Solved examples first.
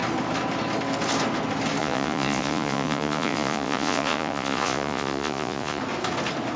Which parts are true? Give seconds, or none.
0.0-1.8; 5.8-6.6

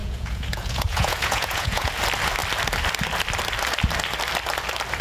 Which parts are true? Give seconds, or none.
1.9-5.0